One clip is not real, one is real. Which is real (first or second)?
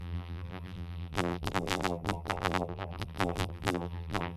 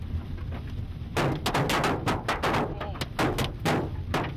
second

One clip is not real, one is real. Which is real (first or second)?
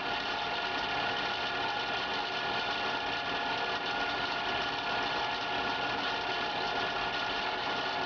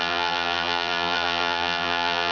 first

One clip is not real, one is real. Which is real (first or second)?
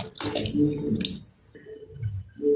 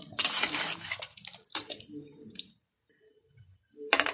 first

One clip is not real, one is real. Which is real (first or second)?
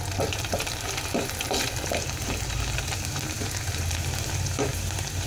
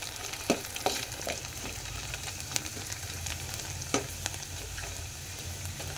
first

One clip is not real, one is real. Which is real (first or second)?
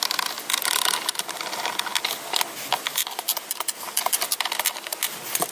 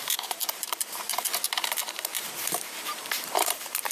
first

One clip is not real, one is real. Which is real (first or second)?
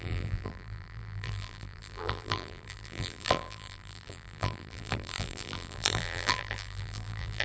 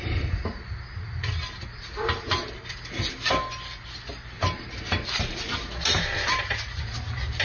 second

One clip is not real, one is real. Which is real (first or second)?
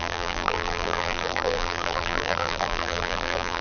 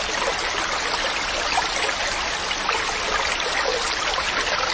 second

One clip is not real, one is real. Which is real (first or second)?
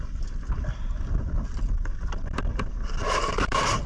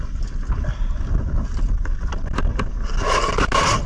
second